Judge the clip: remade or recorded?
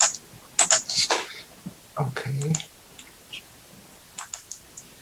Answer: recorded